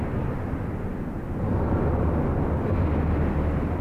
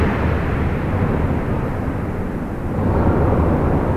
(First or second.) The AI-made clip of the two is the second